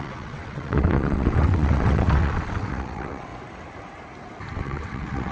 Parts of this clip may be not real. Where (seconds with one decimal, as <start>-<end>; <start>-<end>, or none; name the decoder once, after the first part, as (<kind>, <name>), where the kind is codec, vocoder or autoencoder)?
0.0-3.3 (vocoder, WaveNeXt); 4.5-5.3